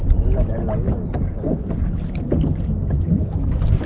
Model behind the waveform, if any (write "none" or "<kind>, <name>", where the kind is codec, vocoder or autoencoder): none